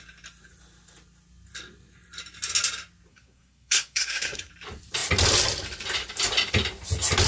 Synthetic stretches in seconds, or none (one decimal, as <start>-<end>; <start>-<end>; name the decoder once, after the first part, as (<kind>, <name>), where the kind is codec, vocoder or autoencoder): 3.1-4.5 (codec, SNAC)